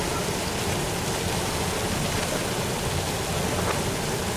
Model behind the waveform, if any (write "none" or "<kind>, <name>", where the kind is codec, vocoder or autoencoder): none